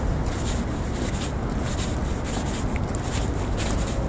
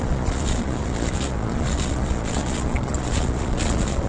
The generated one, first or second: second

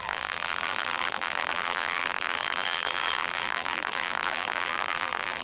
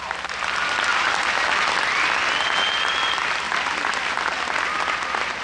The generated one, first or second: first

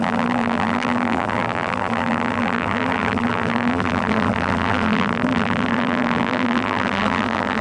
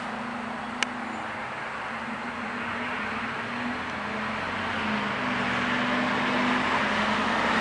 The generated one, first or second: first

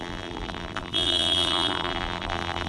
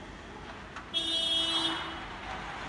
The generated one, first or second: first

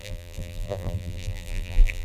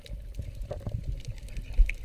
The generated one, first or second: first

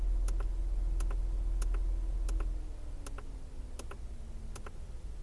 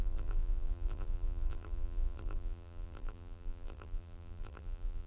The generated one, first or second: second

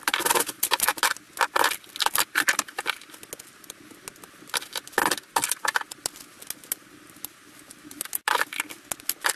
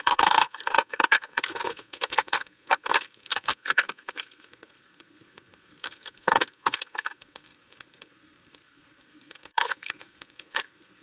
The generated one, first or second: second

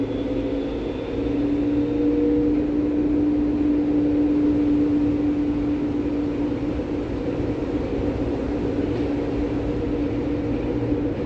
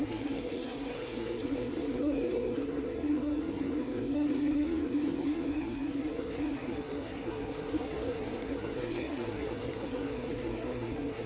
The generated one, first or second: second